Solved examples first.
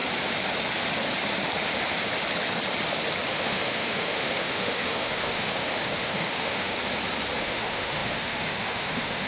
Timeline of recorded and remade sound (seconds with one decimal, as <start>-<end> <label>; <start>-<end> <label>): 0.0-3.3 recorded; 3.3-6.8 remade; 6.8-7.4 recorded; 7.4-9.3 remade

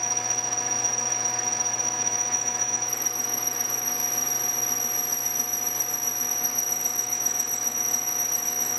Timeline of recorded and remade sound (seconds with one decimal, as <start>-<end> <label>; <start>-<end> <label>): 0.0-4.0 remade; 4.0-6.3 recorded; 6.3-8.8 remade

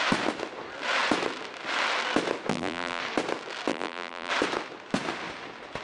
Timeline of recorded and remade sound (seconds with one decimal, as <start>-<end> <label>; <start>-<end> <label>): 0.0-2.5 recorded; 2.5-3.0 remade; 3.0-3.7 recorded; 3.7-4.3 remade; 4.3-5.8 recorded